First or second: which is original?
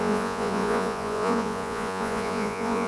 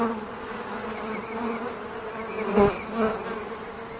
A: second